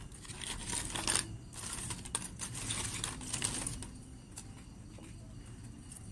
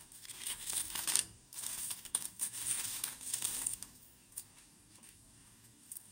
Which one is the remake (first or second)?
second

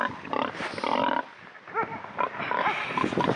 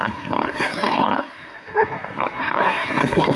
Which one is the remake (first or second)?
second